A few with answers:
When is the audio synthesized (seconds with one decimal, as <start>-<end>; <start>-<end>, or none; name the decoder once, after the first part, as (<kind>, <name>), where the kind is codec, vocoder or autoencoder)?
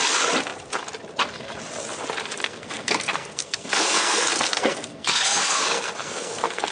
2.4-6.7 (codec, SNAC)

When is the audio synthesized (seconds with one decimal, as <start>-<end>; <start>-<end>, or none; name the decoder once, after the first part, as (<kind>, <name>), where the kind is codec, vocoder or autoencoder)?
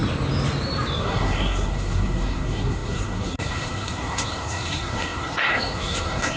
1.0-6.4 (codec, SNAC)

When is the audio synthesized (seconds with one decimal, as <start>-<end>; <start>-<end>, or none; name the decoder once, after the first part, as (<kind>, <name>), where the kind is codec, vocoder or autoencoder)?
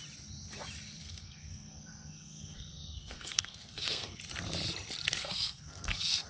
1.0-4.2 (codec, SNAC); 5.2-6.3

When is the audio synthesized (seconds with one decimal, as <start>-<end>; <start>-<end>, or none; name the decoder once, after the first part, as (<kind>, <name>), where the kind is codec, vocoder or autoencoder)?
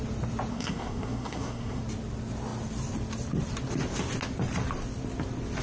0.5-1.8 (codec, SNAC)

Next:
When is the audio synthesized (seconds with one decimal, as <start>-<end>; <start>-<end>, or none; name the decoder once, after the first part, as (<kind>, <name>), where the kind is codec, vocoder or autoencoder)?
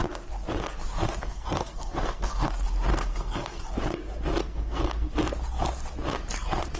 1.2-2.5 (codec, SNAC); 2.9-3.6; 4.4-5.1